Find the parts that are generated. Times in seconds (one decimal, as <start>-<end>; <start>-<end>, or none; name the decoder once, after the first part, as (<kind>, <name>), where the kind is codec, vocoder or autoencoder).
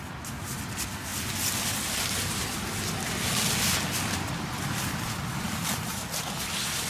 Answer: none